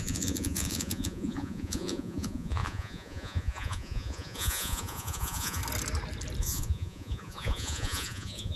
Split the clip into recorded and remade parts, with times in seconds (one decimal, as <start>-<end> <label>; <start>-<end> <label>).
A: 0.0-5.6 remade; 5.6-6.4 recorded; 6.4-8.6 remade

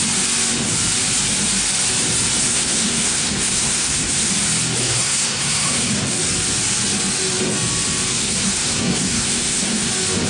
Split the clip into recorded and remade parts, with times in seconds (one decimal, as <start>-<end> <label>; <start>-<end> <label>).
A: 0.0-2.5 recorded; 2.5-4.3 remade; 4.3-4.8 recorded; 4.8-5.9 remade; 5.9-8.2 recorded; 8.2-9.9 remade; 9.9-10.3 recorded

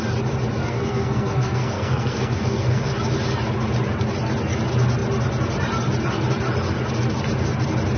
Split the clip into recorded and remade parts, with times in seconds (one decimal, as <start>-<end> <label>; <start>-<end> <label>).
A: 0.0-0.6 recorded; 0.6-2.9 remade; 2.9-8.0 recorded

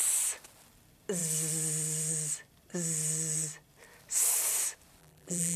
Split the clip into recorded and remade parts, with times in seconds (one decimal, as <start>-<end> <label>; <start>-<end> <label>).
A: 0.0-5.0 recorded; 5.0-5.6 remade

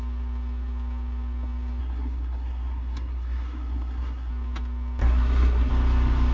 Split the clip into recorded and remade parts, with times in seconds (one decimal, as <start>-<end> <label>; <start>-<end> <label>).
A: 0.0-1.8 recorded; 1.8-4.3 remade; 4.3-5.0 recorded; 5.0-5.7 remade; 5.7-6.3 recorded